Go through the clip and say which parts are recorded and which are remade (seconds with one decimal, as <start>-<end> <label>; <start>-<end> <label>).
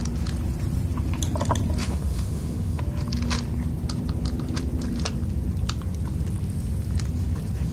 0.0-1.8 recorded; 1.8-2.8 remade; 2.8-7.7 recorded